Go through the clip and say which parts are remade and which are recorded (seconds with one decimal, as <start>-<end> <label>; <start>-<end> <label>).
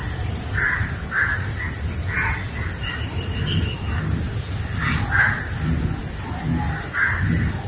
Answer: 0.0-7.7 recorded